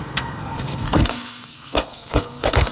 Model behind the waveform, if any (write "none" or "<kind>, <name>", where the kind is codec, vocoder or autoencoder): codec, SNAC